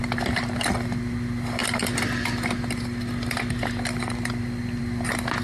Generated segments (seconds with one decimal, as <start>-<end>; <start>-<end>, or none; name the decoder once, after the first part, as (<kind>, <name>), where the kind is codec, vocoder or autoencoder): none